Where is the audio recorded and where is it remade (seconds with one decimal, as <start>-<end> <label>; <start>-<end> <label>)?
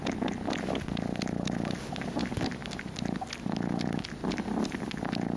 0.0-5.4 recorded